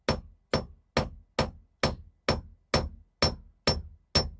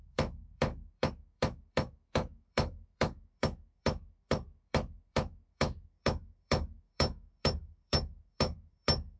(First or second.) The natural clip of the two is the first